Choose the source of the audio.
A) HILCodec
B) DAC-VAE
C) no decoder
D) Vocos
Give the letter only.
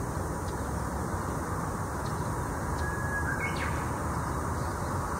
C